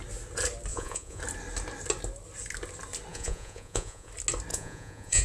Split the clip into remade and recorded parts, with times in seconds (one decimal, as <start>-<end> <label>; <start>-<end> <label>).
0.0-0.7 recorded; 0.7-1.2 remade; 1.2-3.1 recorded; 3.1-4.1 remade; 4.1-4.5 recorded; 4.5-5.2 remade